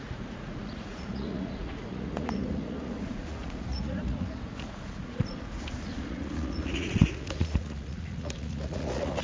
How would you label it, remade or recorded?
remade